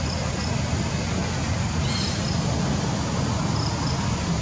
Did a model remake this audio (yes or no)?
no